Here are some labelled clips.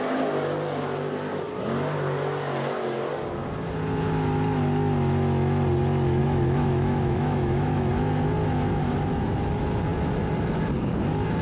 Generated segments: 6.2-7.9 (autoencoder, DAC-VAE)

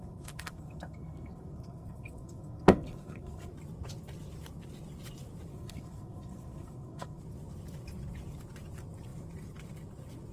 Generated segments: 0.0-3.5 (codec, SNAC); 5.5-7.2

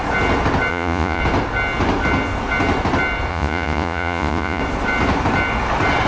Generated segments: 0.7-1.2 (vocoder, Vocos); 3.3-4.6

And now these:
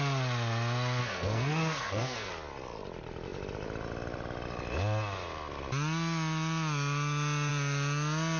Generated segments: 1.0-2.3 (codec, SNAC)